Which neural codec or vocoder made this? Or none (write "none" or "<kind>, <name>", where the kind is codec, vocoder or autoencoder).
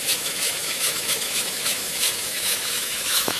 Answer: autoencoder, DAC-VAE